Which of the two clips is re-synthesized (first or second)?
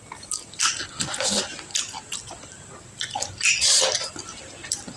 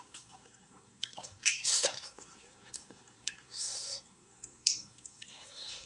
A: second